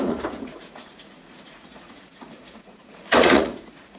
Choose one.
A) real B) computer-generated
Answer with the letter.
B